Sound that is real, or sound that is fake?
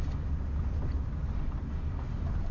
real